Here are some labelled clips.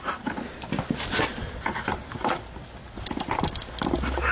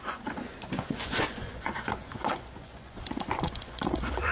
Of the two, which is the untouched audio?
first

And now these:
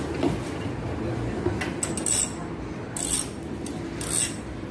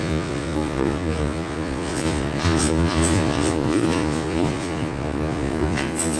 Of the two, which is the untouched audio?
first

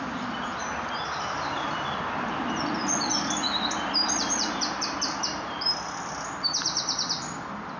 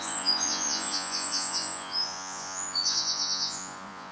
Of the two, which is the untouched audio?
first